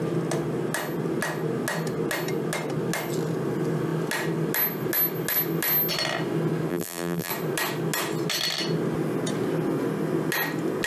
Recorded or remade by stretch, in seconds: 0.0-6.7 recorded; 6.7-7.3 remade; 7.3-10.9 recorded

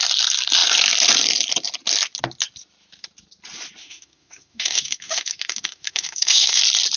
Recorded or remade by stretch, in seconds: 0.0-3.8 recorded; 3.8-6.6 remade; 6.6-7.0 recorded

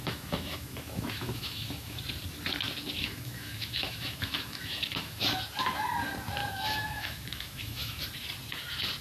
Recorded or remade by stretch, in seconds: 0.0-2.0 remade; 2.0-3.0 recorded; 3.0-5.2 remade; 5.2-6.4 recorded; 6.4-8.0 remade; 8.0-9.0 recorded